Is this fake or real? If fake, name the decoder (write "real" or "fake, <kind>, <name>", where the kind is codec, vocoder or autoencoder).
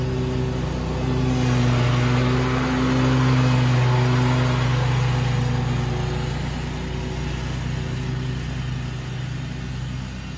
real